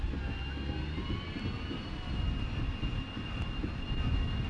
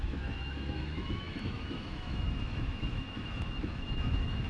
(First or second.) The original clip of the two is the first